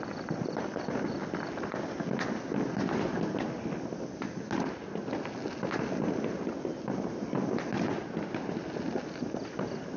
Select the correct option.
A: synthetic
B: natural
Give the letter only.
B